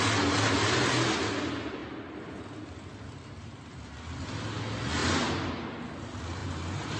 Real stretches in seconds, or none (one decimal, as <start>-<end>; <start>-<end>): 0.0-1.8; 2.4-5.0; 5.5-6.4